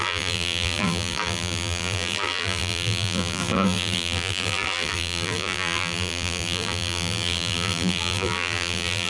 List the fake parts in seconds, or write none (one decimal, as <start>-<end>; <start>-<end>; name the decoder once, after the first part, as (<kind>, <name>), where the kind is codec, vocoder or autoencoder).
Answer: 0.0-9.1 (vocoder, BigVGAN v2)